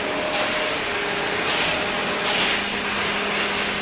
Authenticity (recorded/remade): recorded